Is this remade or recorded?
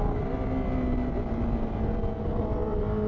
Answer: recorded